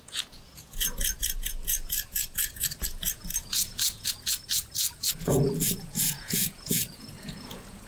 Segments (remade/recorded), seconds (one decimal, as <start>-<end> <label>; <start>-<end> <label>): 0.0-7.9 remade